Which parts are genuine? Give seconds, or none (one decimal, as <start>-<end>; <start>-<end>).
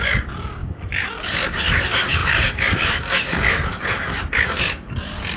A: none